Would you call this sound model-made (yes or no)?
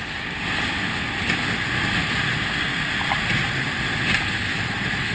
no